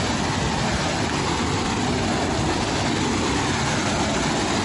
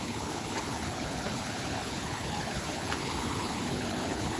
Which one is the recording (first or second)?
first